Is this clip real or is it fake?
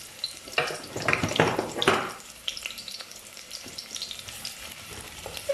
fake